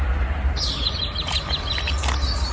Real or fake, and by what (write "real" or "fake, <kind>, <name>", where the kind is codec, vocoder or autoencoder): real